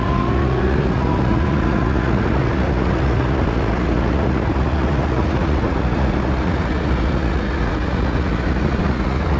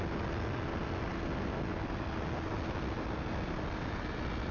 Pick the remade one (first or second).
first